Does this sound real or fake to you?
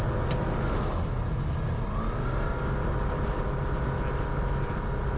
real